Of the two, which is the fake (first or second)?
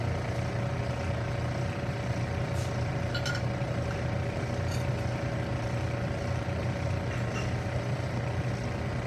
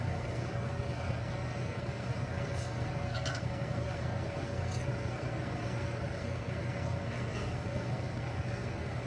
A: second